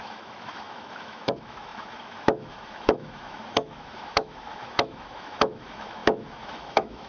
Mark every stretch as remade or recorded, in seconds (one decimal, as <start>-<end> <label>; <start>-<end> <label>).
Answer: 0.0-7.1 remade